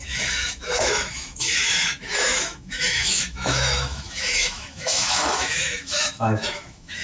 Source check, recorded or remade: remade